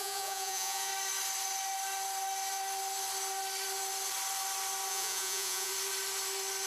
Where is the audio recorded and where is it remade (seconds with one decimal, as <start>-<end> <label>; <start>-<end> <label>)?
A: 0.0-0.9 remade; 0.9-4.9 recorded; 4.9-5.7 remade; 5.7-6.7 recorded